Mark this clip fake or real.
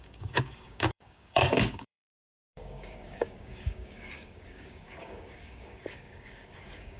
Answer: fake